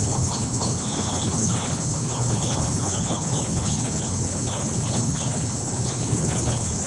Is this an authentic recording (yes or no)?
no